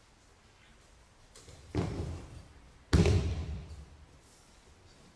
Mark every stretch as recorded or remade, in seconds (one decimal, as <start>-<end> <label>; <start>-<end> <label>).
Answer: 0.0-0.7 recorded; 0.7-3.8 remade; 3.8-5.2 recorded